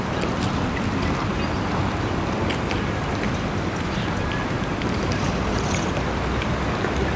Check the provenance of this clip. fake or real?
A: real